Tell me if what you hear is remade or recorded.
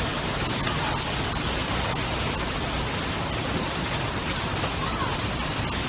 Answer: recorded